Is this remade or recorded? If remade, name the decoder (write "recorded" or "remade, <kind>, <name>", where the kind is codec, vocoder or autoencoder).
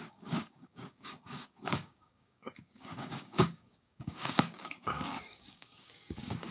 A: remade, codec, DAC